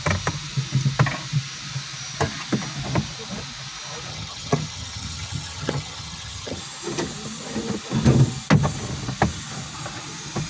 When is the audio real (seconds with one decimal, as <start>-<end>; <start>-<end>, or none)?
0.0-4.1; 6.6-10.5